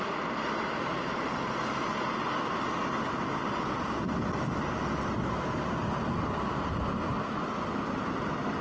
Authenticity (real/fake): real